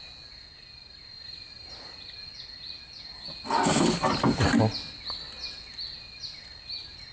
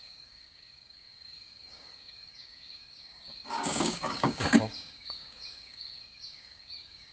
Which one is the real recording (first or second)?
first